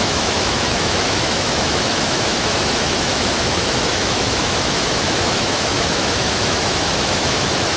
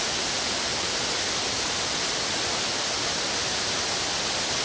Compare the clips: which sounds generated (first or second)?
first